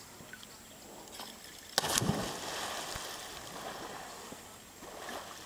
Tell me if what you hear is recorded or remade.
recorded